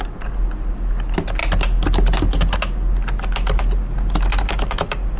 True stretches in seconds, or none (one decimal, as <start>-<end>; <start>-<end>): 0.0-5.2